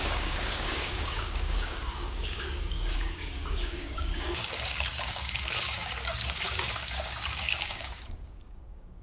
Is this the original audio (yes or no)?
no